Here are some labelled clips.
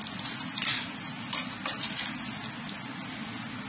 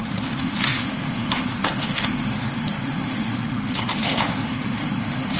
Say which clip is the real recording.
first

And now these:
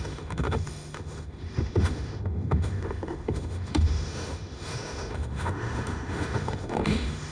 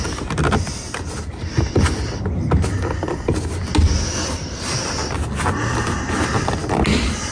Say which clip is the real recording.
second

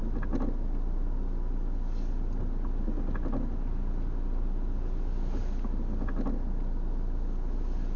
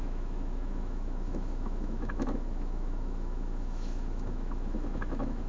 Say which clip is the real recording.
first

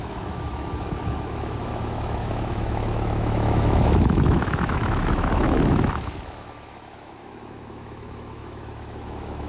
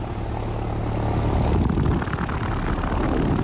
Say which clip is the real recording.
second